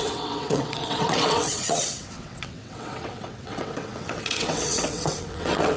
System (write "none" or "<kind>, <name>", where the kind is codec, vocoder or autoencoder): vocoder, WaveNeXt